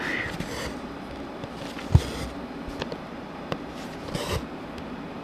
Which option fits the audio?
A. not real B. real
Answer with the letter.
B